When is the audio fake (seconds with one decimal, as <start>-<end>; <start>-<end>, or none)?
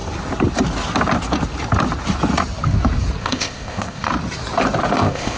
3.2-4.1; 5.0-5.4